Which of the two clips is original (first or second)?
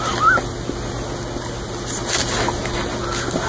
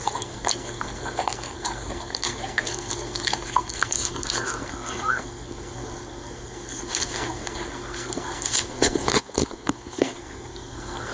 first